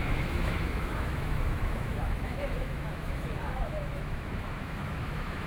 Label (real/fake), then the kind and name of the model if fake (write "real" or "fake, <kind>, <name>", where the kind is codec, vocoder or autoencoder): fake, autoencoder, DAC-VAE